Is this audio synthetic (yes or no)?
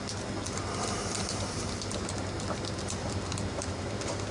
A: no